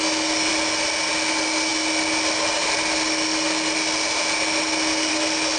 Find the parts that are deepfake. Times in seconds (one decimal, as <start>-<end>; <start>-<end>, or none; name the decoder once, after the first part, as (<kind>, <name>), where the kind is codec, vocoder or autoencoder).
none

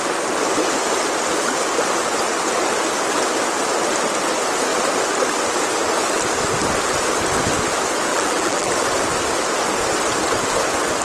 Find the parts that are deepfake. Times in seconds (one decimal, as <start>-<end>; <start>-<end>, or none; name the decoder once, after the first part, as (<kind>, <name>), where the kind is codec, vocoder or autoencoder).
8.1-8.7 (vocoder, BigVGAN v2)

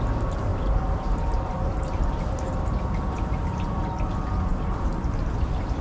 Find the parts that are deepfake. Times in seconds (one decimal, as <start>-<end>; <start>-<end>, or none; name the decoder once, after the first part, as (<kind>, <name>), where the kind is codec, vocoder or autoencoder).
0.5-4.0 (vocoder, BigVGAN v2); 4.5-5.8

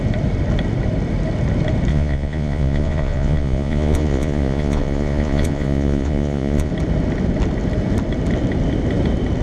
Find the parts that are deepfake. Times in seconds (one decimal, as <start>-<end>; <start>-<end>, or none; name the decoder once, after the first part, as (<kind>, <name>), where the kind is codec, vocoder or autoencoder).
1.9-6.7 (vocoder, Vocos)

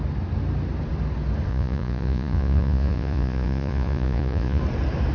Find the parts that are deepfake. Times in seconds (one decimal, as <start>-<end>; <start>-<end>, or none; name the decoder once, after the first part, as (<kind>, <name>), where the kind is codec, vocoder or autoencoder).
1.5-4.6 (vocoder, Vocos)

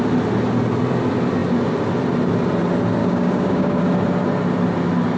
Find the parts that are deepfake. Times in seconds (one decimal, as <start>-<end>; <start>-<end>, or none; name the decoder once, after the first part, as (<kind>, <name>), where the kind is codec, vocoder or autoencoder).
3.0-3.8 (codec, DAC)

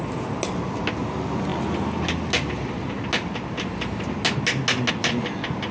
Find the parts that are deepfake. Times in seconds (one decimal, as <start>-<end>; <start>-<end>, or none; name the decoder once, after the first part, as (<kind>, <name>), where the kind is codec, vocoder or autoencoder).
none